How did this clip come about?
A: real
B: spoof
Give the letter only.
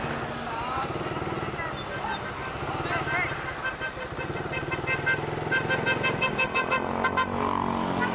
A